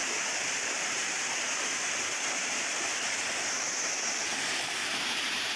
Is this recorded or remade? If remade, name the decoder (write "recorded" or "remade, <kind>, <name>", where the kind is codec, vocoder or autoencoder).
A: remade, vocoder, BigVGAN v2